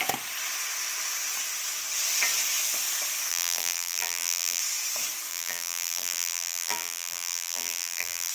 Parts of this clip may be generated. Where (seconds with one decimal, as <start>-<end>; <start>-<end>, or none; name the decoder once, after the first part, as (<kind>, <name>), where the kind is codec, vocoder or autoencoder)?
3.3-4.6 (vocoder, BigVGAN v2); 5.3-8.3